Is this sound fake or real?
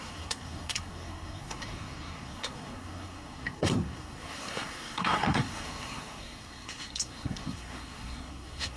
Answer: fake